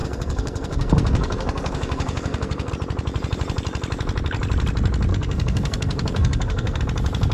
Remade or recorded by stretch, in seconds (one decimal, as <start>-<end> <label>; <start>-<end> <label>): 0.0-2.7 remade; 2.7-5.1 recorded; 5.1-6.8 remade; 6.8-7.3 recorded